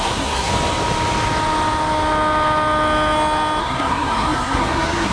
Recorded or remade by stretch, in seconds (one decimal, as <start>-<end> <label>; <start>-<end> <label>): 0.0-0.5 remade; 0.5-3.6 recorded; 3.6-5.1 remade